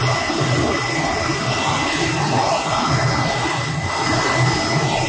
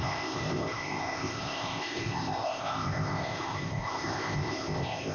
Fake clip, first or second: second